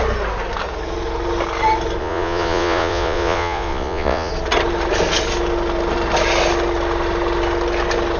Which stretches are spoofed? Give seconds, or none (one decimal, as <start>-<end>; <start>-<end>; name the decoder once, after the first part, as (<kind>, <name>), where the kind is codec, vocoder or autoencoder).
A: 2.0-4.3 (vocoder, Vocos)